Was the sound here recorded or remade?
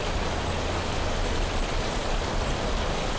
recorded